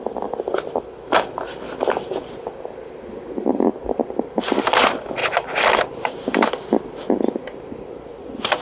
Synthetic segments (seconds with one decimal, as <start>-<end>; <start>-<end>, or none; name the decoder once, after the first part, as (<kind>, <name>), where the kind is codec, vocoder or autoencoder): none